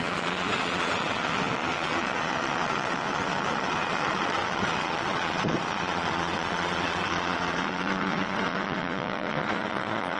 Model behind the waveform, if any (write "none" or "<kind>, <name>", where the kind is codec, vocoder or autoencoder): vocoder, Vocos